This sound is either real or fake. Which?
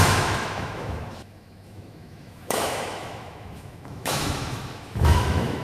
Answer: fake